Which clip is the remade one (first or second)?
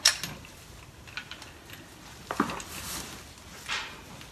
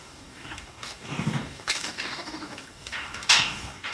second